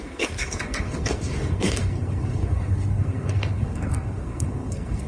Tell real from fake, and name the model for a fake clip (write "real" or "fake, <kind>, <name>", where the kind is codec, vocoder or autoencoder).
fake, codec, SNAC